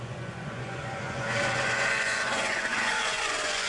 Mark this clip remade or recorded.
remade